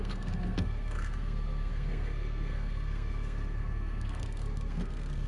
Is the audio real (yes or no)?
no